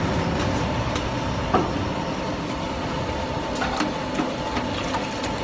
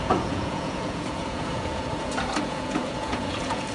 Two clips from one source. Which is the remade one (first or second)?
second